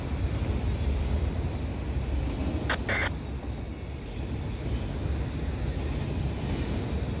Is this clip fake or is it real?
real